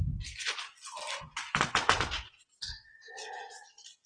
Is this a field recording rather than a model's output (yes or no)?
yes